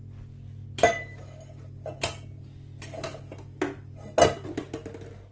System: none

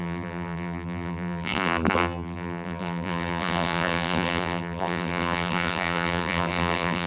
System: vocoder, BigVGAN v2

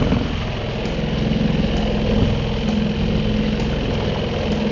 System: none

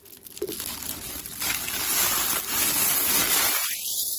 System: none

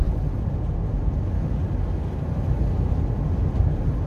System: none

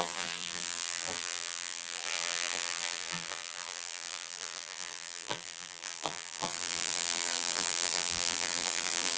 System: vocoder, BigVGAN v2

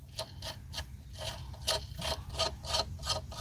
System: none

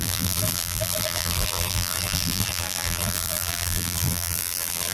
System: vocoder, BigVGAN v2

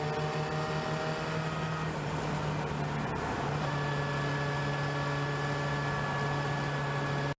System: none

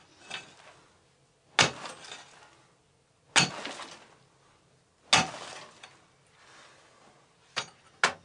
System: none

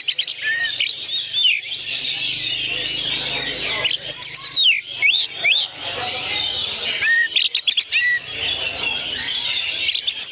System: vocoder, BigVGAN v2